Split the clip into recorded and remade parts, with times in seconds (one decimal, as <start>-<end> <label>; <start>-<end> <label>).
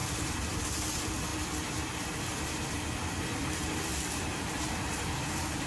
0.0-0.6 remade; 0.6-1.3 recorded; 1.3-3.2 remade; 3.2-5.7 recorded